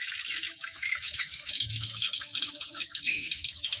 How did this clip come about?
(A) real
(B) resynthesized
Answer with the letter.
B